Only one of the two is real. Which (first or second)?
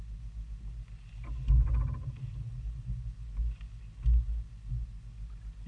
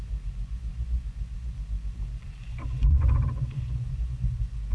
first